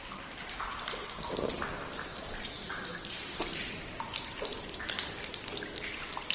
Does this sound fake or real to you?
real